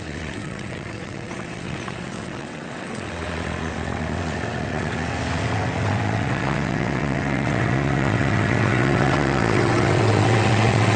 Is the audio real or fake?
fake